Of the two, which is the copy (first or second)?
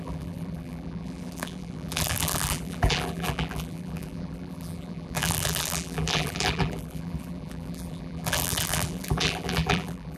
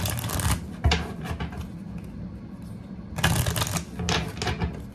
first